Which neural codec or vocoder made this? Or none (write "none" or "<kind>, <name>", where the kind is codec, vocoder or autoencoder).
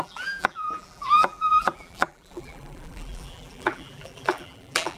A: vocoder, BigVGAN v2